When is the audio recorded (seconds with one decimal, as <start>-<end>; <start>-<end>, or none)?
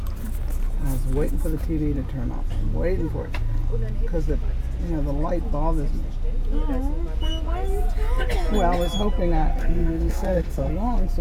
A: 0.0-9.6; 10.7-11.2